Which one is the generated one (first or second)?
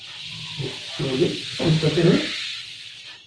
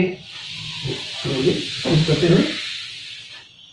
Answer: second